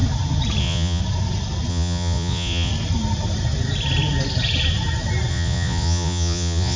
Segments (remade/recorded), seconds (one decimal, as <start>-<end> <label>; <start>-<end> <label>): 0.0-0.6 recorded; 0.6-1.0 remade; 1.0-1.7 recorded; 1.7-2.7 remade; 2.7-5.3 recorded; 5.3-6.8 remade